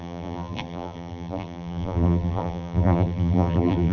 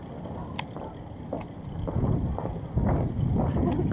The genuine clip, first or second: second